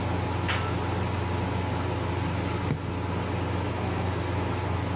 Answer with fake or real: real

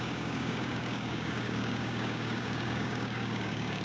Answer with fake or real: fake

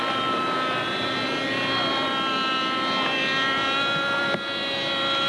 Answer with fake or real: real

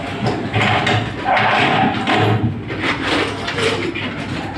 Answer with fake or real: real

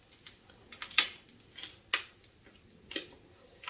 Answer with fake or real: real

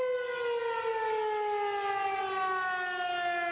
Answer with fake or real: real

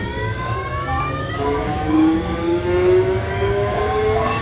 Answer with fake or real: fake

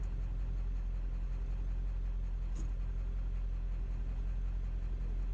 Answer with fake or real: real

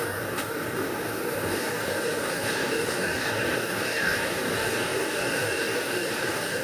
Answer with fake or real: fake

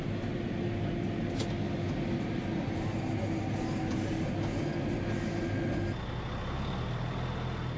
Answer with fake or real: real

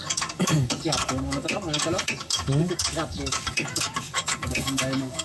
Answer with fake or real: fake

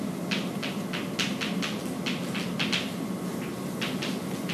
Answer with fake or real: real